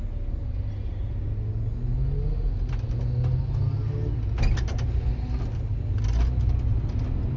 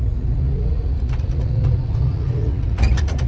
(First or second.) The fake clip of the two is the second